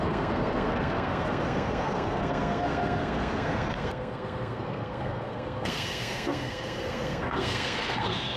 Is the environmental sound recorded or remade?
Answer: remade